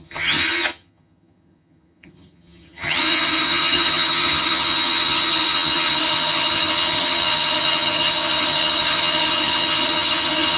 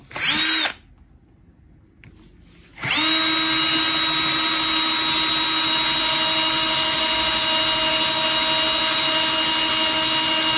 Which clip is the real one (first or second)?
second